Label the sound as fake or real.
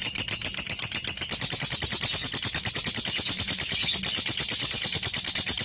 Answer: real